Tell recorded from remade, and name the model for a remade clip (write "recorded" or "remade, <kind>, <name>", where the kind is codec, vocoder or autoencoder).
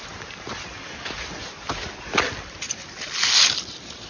recorded